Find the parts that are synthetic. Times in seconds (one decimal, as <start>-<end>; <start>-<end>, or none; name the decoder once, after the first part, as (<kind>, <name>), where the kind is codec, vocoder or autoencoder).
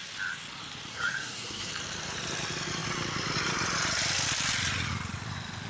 0.9-1.7 (codec, SNAC)